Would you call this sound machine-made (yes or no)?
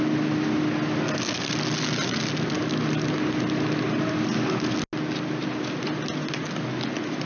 no